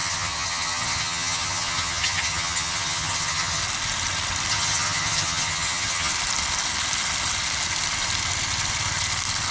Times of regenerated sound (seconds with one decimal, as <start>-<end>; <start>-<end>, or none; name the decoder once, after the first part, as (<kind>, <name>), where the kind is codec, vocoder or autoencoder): 0.0-3.6 (vocoder, HiFi-GAN); 4.5-6.1